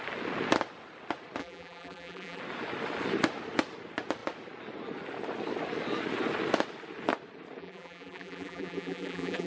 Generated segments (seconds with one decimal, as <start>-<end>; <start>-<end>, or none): 1.4-2.4; 7.6-9.5